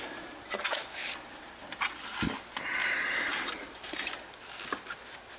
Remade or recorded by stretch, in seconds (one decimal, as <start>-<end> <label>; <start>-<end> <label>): 0.0-2.8 recorded; 2.8-4.1 remade; 4.1-5.4 recorded